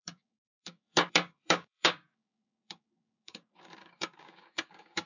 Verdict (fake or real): fake